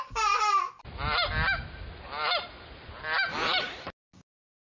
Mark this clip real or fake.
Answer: real